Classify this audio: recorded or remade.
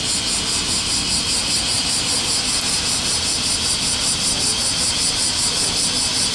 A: recorded